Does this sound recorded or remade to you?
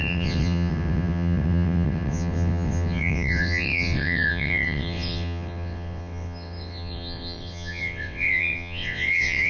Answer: remade